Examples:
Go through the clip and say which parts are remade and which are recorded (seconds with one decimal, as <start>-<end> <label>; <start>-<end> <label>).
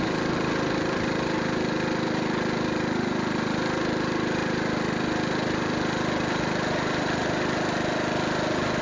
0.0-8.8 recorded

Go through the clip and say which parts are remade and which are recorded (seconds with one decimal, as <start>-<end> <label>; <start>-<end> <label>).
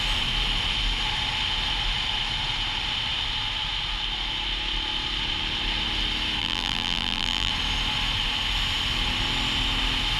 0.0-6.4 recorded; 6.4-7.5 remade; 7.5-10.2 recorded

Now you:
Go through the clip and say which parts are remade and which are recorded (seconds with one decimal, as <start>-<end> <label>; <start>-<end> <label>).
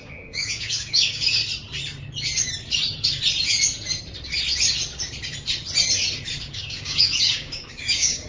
0.0-1.4 remade; 1.4-6.4 recorded; 6.4-8.3 remade